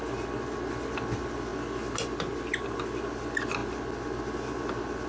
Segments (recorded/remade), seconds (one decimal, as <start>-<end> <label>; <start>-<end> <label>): 0.0-5.1 recorded